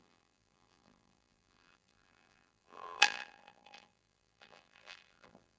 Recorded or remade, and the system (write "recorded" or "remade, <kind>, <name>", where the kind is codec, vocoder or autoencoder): remade, vocoder, BigVGAN v2